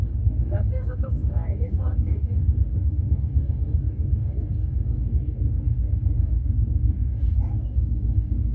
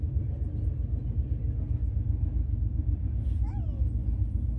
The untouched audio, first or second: second